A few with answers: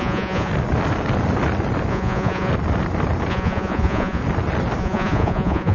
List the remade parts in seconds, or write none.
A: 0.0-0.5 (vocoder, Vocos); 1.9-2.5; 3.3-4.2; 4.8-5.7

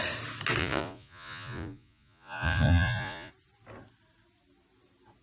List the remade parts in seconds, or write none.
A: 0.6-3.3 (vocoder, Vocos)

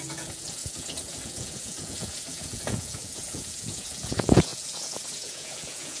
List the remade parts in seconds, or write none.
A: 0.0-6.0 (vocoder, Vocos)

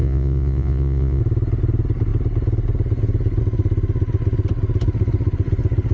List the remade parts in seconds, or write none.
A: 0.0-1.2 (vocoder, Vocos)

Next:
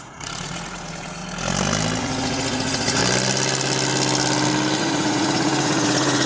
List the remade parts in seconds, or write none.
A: 0.0-1.2 (vocoder, Vocos); 2.0-3.0; 4.8-6.3

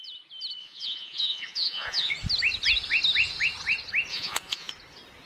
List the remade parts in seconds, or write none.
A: 0.6-2.1 (vocoder, Vocos); 4.1-4.7

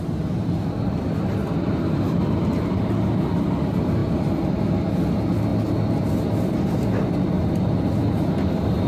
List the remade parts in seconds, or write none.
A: none

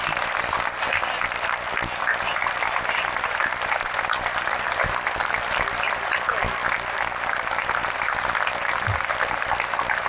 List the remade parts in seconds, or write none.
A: none